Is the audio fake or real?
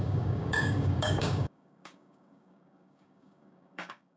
fake